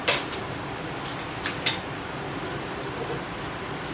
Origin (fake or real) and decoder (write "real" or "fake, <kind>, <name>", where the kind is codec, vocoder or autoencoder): real